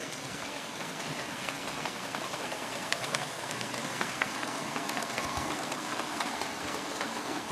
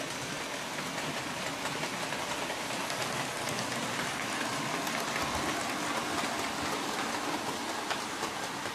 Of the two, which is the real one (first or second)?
second